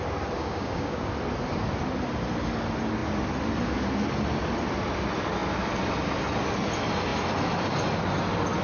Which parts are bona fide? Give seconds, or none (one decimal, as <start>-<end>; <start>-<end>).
0.0-0.4; 1.1-8.6